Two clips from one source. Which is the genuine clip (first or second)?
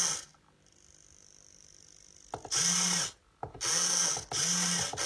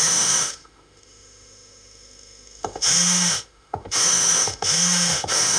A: first